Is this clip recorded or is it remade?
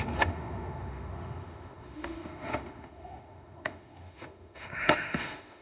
remade